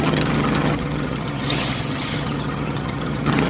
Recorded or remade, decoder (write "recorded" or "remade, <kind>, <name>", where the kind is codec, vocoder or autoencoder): remade, vocoder, HiFi-GAN